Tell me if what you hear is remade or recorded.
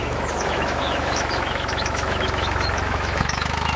remade